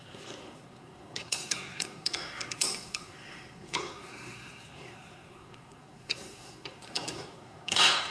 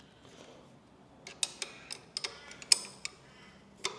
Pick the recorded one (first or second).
second